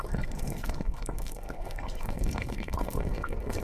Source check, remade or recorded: remade